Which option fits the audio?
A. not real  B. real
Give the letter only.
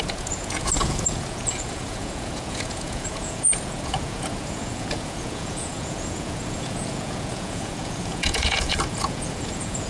A